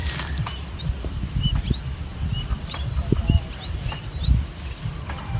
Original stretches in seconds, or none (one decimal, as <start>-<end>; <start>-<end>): 0.0-5.4